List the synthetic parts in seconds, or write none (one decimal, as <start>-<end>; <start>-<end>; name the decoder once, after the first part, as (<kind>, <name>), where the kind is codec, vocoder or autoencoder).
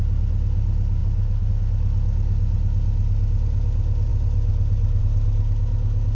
4.1-5.0 (vocoder, BigVGAN v2)